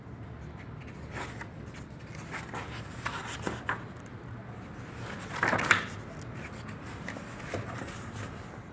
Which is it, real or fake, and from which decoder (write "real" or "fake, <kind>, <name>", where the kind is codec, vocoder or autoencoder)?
real